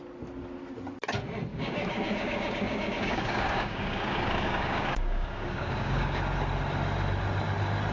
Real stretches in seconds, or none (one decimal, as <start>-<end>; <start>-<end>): 0.0-1.5; 6.2-7.9